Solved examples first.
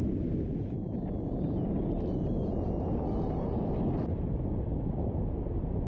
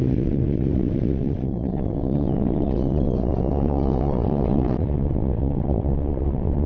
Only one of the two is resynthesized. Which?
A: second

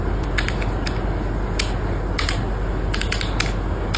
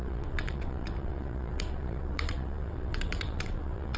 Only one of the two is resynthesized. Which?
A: second